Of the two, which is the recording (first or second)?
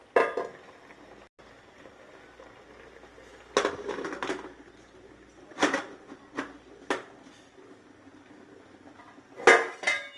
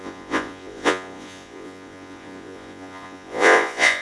first